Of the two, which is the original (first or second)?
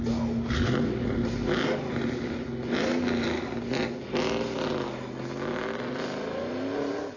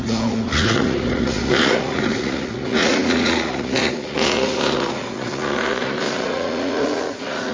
first